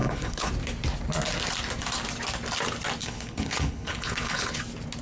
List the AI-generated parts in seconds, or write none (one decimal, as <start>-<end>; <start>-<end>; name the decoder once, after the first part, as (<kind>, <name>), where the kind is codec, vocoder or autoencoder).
0.0-0.5 (codec, HILCodec); 3.0-4.6